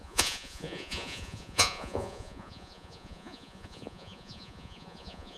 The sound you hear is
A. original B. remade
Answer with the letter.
B